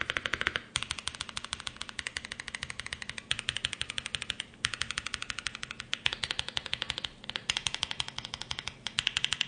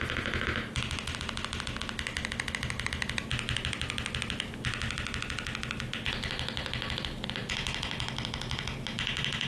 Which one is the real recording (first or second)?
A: second